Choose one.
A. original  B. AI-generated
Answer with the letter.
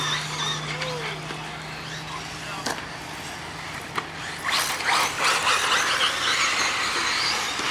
A